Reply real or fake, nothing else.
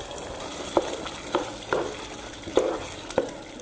real